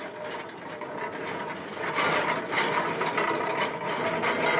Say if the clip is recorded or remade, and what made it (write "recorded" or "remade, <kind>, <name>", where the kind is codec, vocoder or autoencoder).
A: recorded